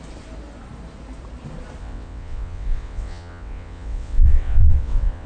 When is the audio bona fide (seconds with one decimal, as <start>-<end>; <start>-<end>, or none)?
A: 0.0-1.8